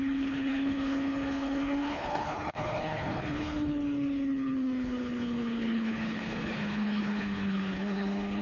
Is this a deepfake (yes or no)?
yes